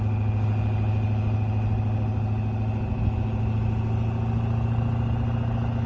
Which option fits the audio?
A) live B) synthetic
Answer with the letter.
A